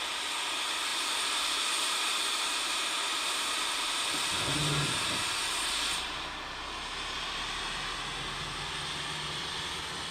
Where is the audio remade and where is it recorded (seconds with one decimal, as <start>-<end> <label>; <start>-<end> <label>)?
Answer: 0.0-0.9 recorded; 0.9-4.3 remade; 4.3-10.1 recorded